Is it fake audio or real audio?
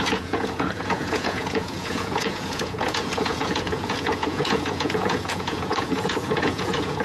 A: fake